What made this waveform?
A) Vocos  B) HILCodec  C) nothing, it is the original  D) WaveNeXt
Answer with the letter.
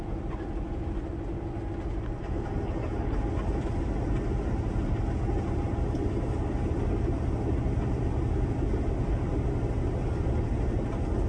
C